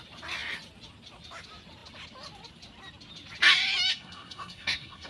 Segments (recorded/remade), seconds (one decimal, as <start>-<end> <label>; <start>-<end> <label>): 0.0-3.9 recorded; 3.9-5.1 remade